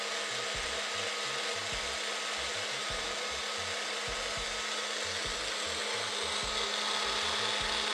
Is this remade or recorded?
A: recorded